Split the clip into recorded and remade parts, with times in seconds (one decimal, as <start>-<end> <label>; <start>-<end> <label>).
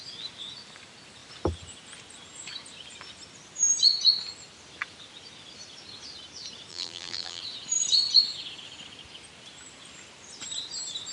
0.0-6.7 recorded; 6.7-7.4 remade; 7.4-11.1 recorded